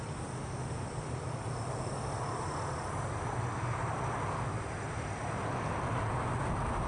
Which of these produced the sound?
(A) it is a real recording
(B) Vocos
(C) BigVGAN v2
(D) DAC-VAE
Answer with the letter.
A